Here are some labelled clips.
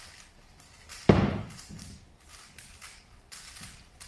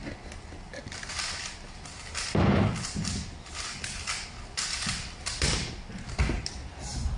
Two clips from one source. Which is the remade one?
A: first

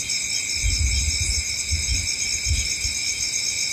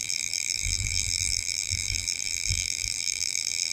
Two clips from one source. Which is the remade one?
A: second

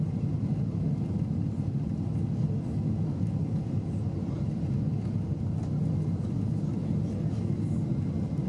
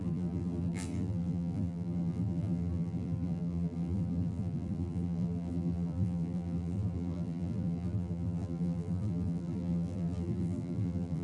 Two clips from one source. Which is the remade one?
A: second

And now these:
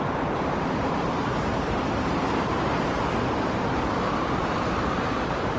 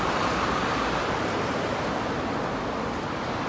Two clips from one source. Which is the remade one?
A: first